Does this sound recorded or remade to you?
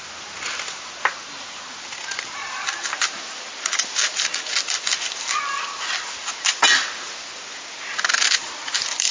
recorded